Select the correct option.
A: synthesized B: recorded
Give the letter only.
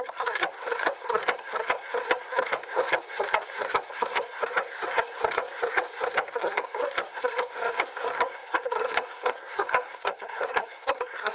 A